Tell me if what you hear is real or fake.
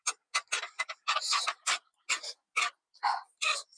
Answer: real